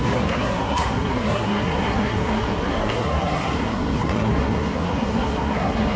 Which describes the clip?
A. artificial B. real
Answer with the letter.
A